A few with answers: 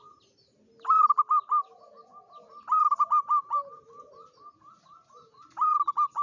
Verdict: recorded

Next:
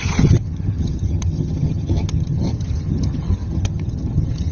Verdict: remade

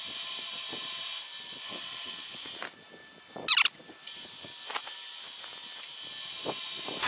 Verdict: recorded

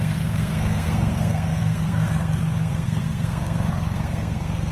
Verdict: remade